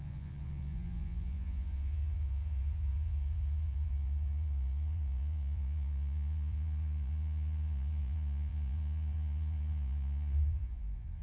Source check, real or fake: fake